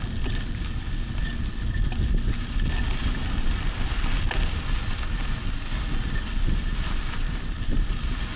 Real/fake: real